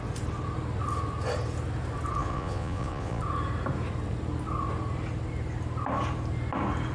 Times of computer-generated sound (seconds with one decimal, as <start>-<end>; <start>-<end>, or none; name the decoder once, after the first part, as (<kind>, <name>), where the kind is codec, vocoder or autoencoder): 2.2-3.2 (vocoder, Vocos)